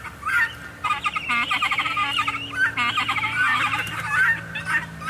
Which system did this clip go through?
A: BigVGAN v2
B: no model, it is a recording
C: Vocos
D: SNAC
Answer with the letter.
B